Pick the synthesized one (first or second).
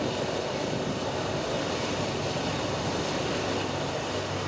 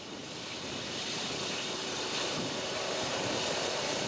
second